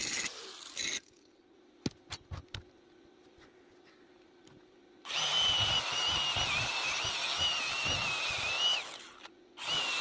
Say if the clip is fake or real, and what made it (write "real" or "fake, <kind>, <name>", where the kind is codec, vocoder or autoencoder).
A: real